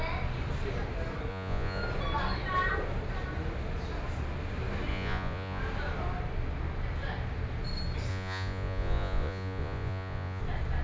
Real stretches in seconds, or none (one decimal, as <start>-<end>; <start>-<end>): 0.0-1.3; 1.8-4.9; 5.6-8.1; 10.4-10.8